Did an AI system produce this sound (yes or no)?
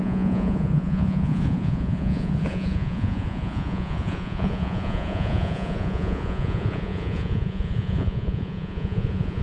yes